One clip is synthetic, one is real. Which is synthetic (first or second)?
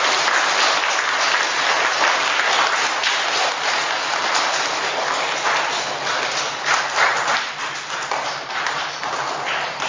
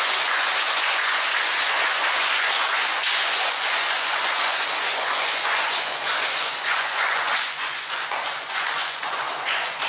second